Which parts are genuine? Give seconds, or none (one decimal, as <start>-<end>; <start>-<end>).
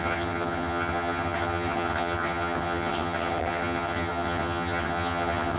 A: none